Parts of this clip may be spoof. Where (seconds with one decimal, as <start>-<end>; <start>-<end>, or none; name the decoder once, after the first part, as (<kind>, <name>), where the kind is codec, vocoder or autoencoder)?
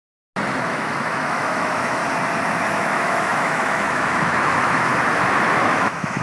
0.6-2.0 (autoencoder, DAC-VAE); 2.7-4.9; 5.6-6.2